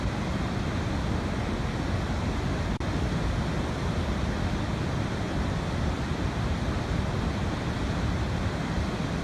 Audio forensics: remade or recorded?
recorded